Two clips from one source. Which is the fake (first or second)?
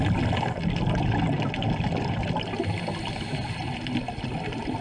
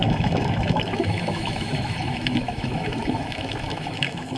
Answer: second